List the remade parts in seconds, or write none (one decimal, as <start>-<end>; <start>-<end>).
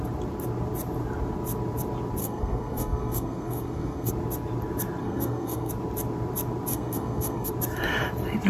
2.2-4.1; 5.0-5.7; 6.7-7.5